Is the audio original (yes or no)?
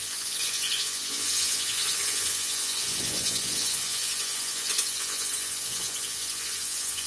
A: no